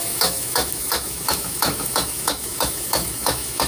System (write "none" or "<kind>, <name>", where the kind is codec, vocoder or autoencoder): autoencoder, DAC-VAE